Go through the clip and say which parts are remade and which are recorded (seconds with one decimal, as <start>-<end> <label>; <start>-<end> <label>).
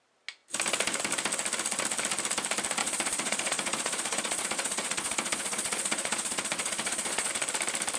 0.0-2.8 recorded; 2.8-7.3 remade; 7.3-8.0 recorded